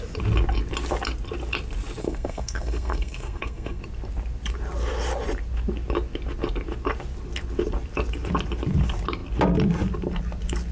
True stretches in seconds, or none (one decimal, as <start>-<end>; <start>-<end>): 0.0-2.0; 3.8-10.7